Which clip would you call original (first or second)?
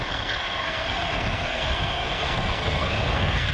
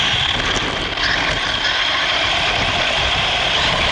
second